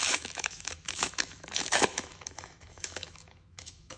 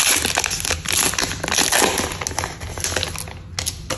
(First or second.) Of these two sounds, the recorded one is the second